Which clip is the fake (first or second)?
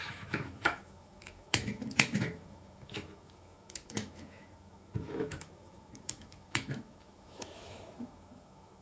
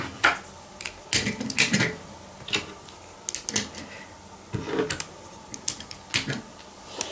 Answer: first